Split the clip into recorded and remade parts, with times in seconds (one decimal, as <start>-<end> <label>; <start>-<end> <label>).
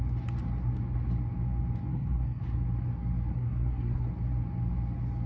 0.0-1.9 recorded; 1.9-2.4 remade; 2.4-3.3 recorded; 3.3-4.1 remade; 4.1-5.3 recorded